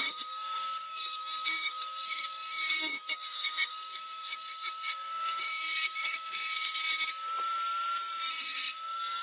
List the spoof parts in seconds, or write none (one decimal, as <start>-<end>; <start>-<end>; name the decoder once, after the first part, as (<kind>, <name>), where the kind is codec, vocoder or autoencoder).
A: 0.0-6.8 (codec, SNAC); 8.3-9.2